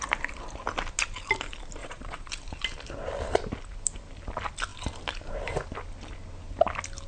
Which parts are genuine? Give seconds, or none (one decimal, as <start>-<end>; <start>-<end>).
0.0-1.8; 2.3-7.1